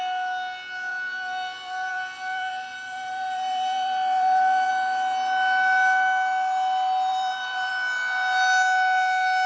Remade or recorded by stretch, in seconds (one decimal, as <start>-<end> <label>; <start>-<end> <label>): 0.0-0.9 recorded; 0.9-4.7 remade; 4.7-7.1 recorded; 7.1-7.7 remade; 7.7-9.5 recorded